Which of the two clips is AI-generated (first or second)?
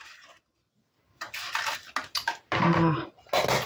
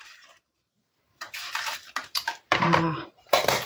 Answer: second